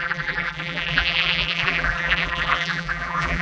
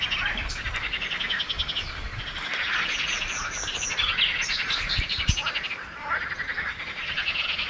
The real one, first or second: second